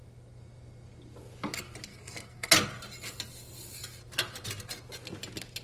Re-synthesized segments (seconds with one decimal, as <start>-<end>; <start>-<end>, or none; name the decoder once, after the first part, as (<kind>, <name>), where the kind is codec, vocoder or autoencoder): 1.9-2.5 (codec, SNAC)